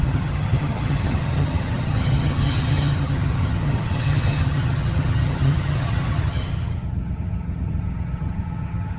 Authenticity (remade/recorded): remade